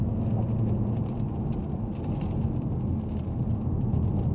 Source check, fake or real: real